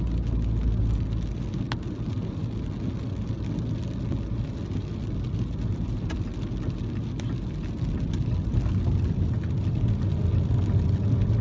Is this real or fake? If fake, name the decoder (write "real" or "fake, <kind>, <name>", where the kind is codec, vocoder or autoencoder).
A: real